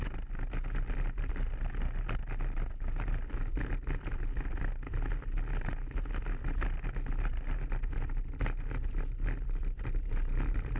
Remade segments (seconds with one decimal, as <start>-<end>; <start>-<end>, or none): none